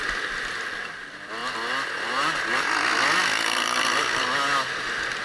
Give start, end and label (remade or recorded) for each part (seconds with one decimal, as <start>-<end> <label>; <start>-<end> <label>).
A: 0.0-5.2 recorded